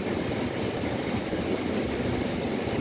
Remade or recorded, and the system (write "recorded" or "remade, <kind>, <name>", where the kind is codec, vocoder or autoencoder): recorded